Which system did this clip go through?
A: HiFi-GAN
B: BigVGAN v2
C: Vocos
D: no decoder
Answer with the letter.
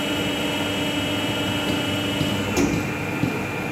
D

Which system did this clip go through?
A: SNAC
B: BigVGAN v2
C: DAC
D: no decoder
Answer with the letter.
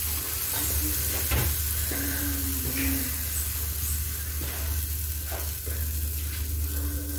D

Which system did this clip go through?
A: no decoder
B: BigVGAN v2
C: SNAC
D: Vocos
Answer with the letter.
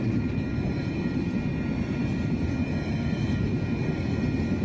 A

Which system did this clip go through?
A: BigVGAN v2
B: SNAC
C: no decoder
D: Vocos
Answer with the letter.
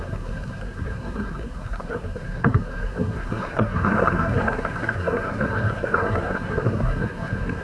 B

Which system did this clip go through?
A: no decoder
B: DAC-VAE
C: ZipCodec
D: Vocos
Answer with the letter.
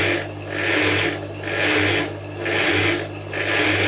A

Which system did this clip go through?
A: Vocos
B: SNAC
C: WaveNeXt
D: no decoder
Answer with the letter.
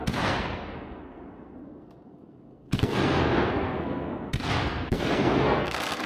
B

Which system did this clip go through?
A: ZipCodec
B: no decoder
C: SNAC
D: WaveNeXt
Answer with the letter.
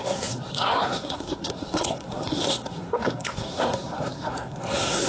C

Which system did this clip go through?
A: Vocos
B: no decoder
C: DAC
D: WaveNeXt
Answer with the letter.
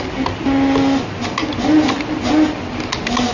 B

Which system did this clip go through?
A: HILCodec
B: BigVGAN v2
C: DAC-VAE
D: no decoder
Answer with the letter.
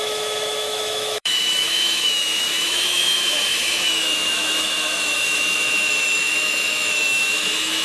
C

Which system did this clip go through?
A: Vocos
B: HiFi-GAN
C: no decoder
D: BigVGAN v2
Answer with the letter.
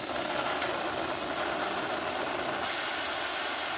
C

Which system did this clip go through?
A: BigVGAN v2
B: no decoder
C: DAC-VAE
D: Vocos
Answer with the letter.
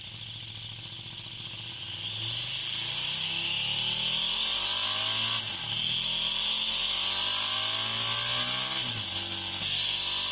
B